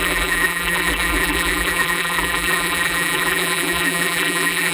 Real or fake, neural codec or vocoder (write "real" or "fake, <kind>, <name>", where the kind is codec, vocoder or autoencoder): fake, vocoder, BigVGAN v2